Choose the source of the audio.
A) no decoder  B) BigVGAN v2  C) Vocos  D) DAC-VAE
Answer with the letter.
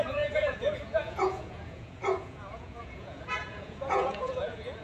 C